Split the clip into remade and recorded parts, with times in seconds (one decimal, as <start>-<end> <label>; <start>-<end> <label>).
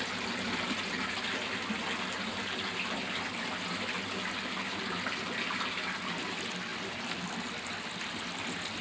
0.0-6.7 recorded; 6.7-7.3 remade; 7.3-8.8 recorded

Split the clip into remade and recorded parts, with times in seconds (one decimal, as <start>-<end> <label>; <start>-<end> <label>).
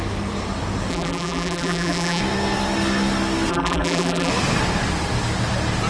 0.0-0.9 recorded; 0.9-2.2 remade; 2.2-3.5 recorded; 3.5-4.3 remade; 4.3-5.9 recorded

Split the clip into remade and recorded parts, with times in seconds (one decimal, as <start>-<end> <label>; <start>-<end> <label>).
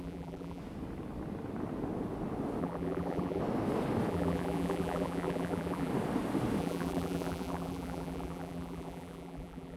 0.0-0.6 remade; 0.6-2.6 recorded; 2.6-3.4 remade; 3.4-4.1 recorded; 4.1-5.9 remade; 5.9-6.6 recorded; 6.6-9.8 remade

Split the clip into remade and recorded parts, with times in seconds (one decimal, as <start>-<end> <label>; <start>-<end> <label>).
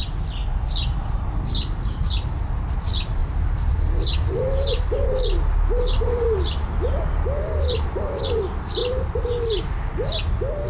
0.0-0.4 recorded; 0.4-2.1 remade; 2.1-3.2 recorded; 3.2-8.3 remade; 8.3-8.8 recorded; 8.8-10.1 remade; 10.1-10.7 recorded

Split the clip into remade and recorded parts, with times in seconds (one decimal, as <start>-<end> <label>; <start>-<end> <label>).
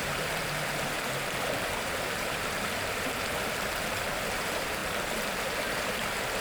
0.0-6.4 remade